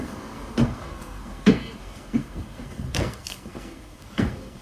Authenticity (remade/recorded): remade